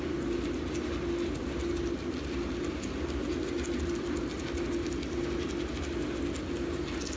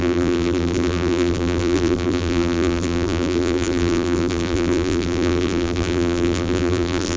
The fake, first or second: second